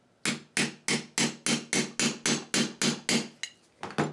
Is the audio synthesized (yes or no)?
no